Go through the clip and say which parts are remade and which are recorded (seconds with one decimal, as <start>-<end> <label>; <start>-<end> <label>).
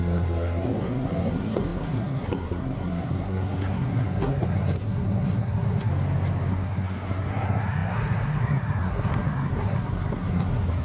0.0-5.9 remade; 5.9-6.5 recorded; 6.5-10.8 remade